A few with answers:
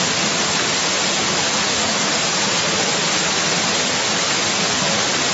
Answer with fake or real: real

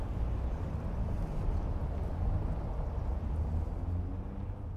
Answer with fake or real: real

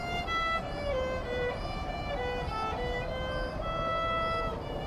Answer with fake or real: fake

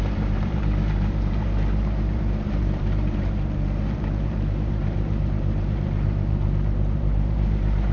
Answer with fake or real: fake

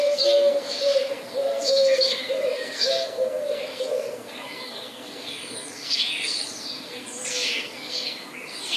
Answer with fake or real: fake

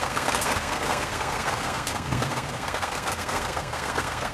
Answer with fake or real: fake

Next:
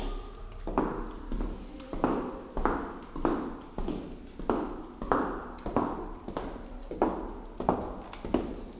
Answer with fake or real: real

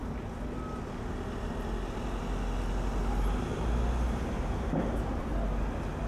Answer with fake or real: real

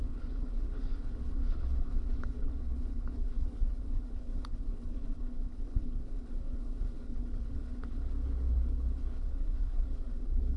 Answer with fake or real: fake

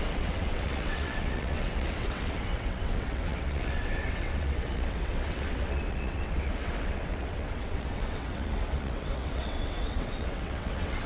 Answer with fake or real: fake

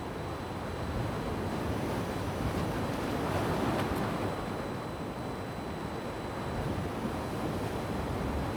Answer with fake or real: real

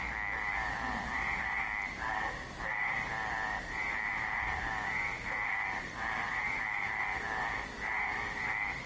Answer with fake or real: real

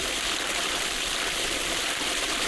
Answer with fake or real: fake